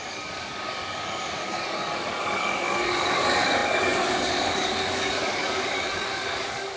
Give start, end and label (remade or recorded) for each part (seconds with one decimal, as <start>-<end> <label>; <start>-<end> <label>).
0.0-6.8 remade